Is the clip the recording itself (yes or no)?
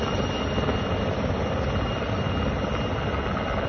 yes